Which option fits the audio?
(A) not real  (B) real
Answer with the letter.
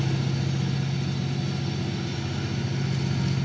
B